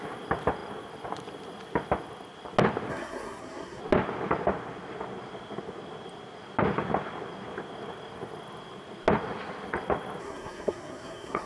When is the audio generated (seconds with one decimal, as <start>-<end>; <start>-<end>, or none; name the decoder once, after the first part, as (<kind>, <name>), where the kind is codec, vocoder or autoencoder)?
2.9-3.8 (codec, SNAC); 10.2-11.5